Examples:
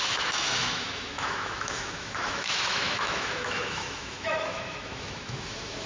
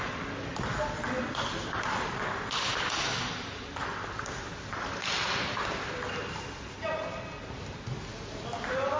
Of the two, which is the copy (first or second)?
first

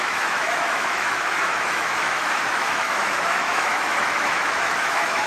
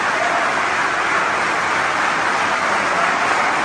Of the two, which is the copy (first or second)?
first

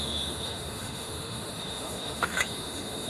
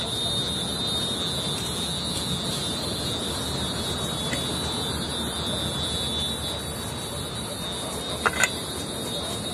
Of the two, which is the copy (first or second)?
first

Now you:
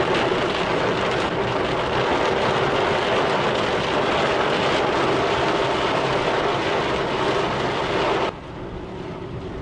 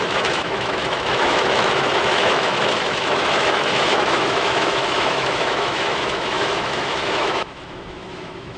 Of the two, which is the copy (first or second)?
second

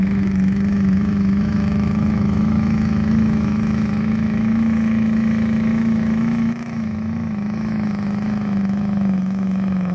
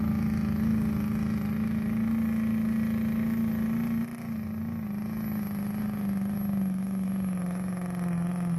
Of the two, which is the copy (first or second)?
first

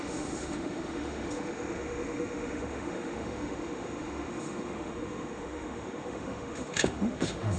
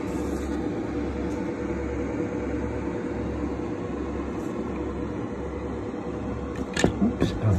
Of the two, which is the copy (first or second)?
first